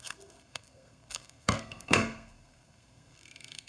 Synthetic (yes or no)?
yes